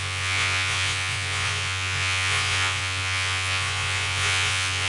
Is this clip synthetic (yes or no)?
yes